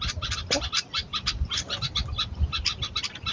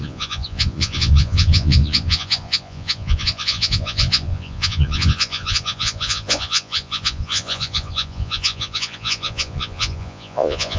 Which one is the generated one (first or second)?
second